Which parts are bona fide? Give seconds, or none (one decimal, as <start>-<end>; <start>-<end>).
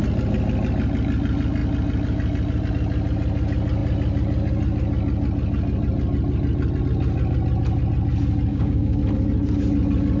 0.0-8.5; 9.0-10.2